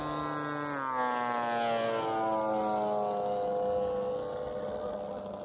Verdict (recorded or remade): recorded